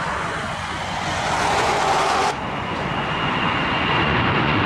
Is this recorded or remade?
remade